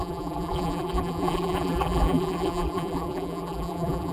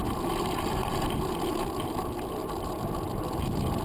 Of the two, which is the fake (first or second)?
first